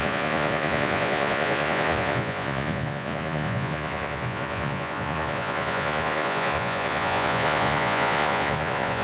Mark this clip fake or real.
fake